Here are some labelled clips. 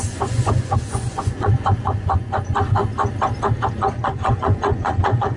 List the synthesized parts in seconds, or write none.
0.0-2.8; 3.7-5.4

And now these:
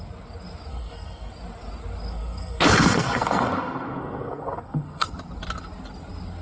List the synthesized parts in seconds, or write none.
0.7-1.3; 2.1-5.1

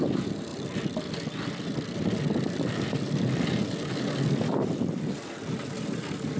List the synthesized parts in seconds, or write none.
none

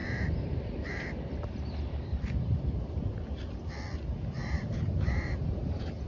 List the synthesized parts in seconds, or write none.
0.0-3.7; 4.4-6.1

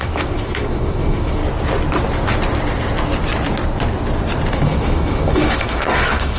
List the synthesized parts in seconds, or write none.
0.0-1.4; 4.5-6.4

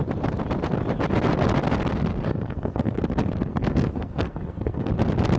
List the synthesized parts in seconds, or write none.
2.1-3.0; 3.5-4.9

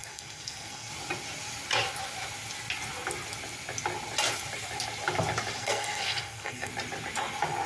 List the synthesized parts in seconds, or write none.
0.0-0.9; 5.6-6.7